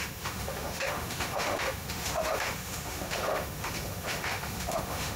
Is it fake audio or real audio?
fake